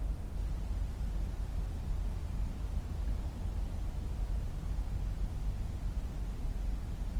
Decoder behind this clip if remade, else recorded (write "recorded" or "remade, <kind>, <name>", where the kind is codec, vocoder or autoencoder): recorded